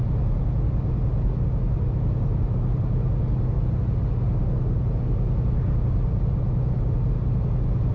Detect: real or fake real